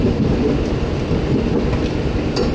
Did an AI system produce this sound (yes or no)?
no